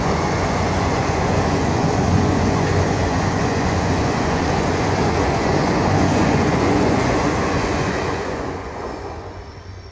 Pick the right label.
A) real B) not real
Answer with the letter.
B